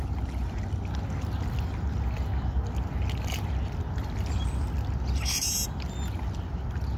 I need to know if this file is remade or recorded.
recorded